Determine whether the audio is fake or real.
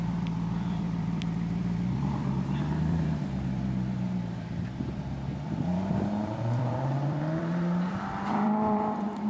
fake